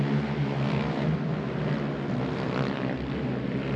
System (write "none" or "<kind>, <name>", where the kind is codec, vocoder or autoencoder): none